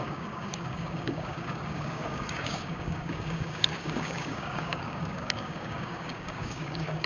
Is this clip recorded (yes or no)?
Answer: no